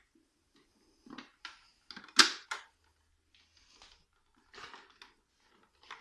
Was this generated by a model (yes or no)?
no